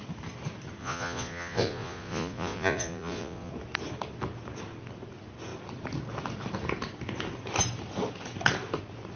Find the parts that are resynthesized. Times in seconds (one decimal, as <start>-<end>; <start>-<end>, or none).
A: 0.8-3.5